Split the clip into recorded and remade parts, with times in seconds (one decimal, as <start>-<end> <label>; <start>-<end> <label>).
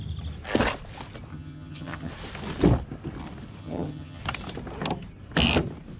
0.0-1.3 recorded; 1.3-2.1 remade; 2.1-3.6 recorded; 3.6-4.2 remade; 4.2-6.0 recorded